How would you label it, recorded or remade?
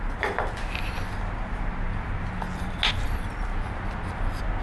recorded